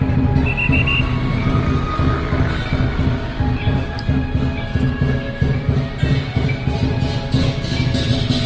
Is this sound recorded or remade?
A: recorded